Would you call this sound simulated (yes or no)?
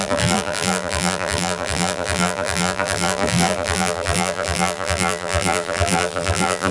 yes